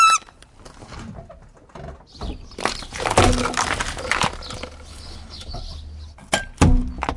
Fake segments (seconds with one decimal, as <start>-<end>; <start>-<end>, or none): 4.9-5.6